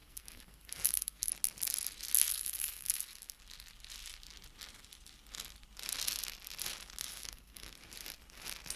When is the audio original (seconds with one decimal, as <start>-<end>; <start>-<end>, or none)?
1.3-2.3; 3.4-7.1; 7.7-8.8